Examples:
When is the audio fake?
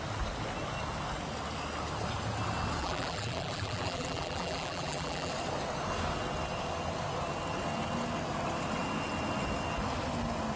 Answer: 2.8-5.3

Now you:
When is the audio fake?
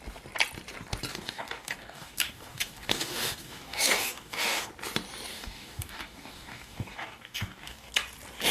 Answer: 1.1-4.7; 5.3-7.9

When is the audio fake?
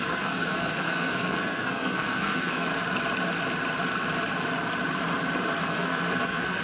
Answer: 0.0-2.7; 5.6-6.6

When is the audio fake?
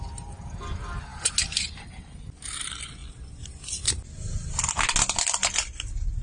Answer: none